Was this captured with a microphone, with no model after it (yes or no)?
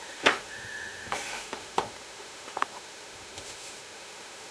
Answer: no